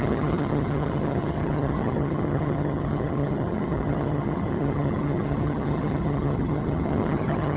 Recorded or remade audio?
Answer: remade